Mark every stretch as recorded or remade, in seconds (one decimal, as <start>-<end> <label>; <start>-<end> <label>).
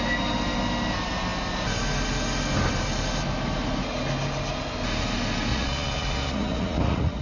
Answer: 0.0-5.5 recorded; 5.5-7.2 remade